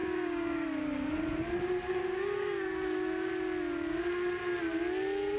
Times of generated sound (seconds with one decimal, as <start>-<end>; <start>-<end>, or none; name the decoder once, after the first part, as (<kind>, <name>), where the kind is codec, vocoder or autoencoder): 0.0-1.1 (codec, DAC); 2.0-3.3